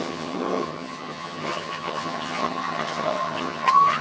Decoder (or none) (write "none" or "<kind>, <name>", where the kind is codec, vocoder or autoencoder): vocoder, HiFi-GAN